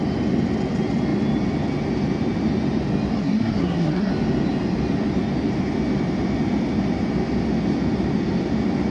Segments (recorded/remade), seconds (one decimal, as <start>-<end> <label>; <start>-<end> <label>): 0.0-3.1 recorded; 3.1-4.1 remade; 4.1-8.9 recorded